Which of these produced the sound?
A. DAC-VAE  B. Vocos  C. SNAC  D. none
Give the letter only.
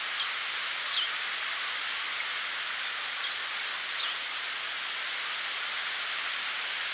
D